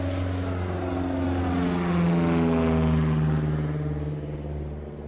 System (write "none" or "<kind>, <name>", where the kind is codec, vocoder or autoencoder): none